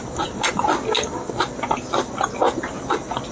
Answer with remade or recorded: recorded